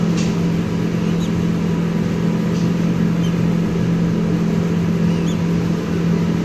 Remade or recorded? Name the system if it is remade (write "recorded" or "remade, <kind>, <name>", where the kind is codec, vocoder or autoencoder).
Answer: recorded